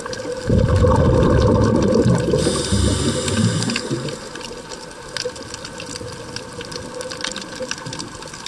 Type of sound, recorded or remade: recorded